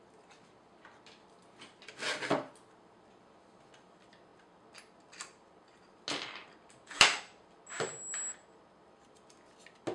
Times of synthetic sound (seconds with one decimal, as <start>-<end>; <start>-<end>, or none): none